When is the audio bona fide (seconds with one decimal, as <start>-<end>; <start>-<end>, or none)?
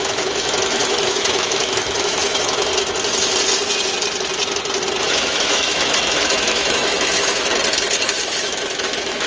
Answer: 2.7-5.0; 7.5-8.3